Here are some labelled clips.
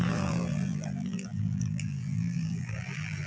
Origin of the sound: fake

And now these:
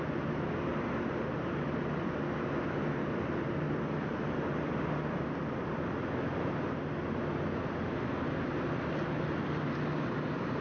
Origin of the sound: real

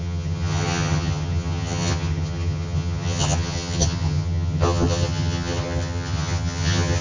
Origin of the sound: fake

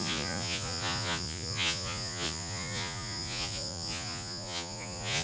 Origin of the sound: fake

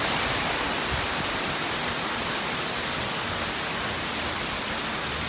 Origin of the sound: real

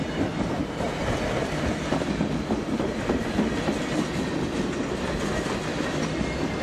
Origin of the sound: fake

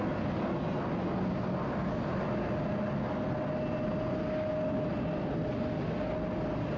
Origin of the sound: real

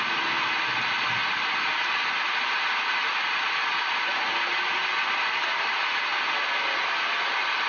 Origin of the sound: real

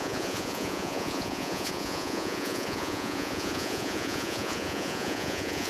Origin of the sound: fake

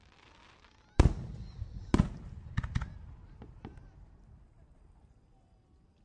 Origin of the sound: real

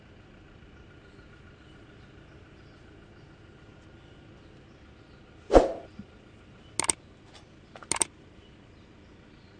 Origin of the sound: real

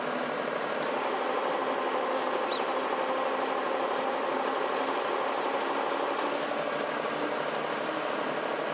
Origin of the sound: real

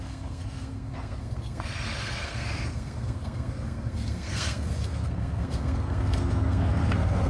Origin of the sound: fake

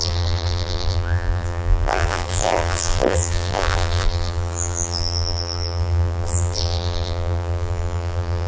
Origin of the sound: fake